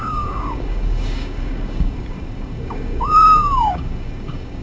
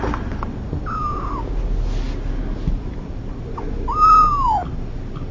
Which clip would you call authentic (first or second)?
second